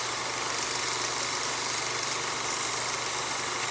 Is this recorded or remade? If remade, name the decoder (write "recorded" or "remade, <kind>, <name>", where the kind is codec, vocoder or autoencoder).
recorded